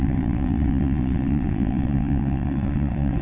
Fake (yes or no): yes